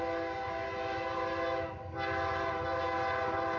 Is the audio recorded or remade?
recorded